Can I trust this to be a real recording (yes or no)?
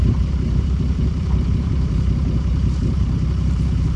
no